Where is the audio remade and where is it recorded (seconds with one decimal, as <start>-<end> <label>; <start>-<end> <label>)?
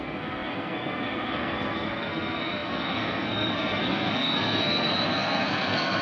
0.0-6.0 remade